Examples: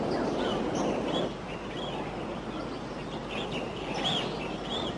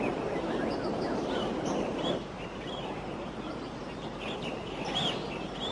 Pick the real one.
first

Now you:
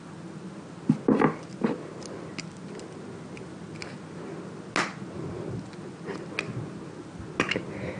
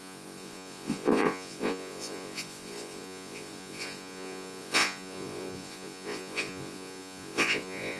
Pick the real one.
first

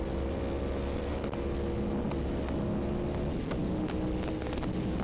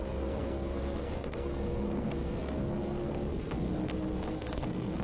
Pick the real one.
first